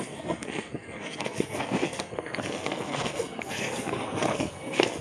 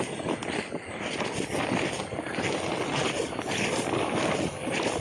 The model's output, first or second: first